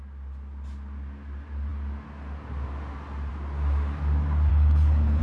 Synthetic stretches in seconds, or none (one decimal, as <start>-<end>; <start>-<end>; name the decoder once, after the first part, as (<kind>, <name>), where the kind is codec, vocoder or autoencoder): 4.5-5.2 (codec, HILCodec)